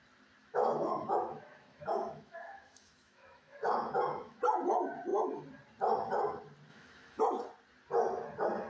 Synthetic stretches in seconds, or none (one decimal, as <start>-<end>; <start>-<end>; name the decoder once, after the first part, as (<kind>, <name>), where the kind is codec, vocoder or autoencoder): 0.4-4.4 (autoencoder, DAC-VAE); 6.7-7.2

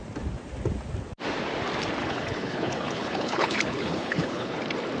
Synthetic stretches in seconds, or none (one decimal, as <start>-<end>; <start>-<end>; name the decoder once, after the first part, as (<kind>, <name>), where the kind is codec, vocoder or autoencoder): 2.0-4.6 (codec, HILCodec)